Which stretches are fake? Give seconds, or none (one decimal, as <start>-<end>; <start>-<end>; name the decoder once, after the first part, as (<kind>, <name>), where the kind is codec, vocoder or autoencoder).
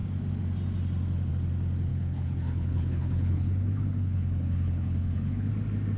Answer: 1.9-5.5 (codec, HILCodec)